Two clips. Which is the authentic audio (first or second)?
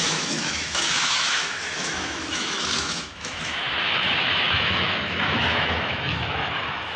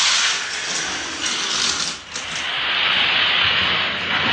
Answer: second